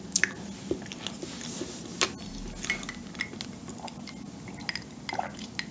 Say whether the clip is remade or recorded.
recorded